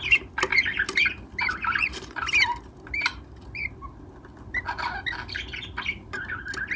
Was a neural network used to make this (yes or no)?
no